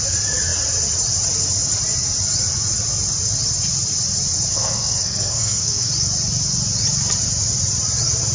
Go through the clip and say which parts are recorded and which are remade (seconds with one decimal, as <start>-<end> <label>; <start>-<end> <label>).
0.0-4.5 recorded; 4.5-5.9 remade; 5.9-8.3 recorded

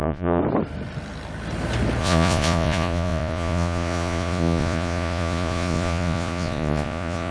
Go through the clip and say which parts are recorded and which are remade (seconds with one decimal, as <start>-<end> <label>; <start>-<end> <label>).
0.0-0.4 remade; 0.4-2.0 recorded; 2.0-7.3 remade

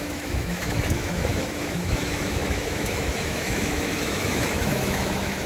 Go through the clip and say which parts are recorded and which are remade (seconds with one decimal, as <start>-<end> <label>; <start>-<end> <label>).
0.0-5.5 remade

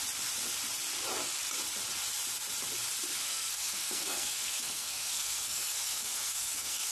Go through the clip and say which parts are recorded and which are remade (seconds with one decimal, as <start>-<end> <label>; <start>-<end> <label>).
0.0-3.2 recorded; 3.2-6.9 remade

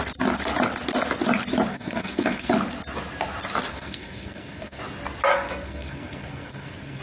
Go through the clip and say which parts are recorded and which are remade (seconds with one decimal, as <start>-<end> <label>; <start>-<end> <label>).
0.0-1.7 recorded; 1.7-2.5 remade; 2.5-3.7 recorded; 3.7-4.8 remade; 4.8-5.3 recorded; 5.3-7.0 remade